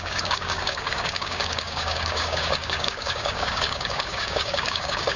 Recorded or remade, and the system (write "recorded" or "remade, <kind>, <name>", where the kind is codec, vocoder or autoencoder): remade, codec, DAC